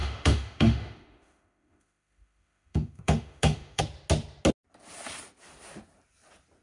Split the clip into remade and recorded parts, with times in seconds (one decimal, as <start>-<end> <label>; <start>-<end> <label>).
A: 0.0-3.8 remade; 3.8-6.6 recorded